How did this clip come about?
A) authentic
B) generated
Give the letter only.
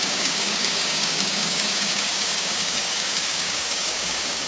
B